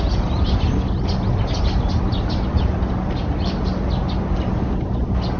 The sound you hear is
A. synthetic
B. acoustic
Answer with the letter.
B